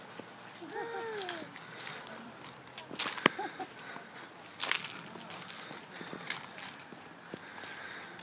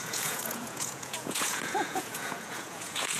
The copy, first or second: second